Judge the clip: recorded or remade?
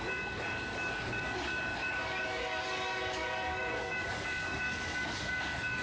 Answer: remade